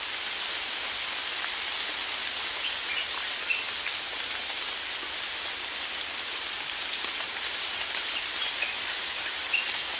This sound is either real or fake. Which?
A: real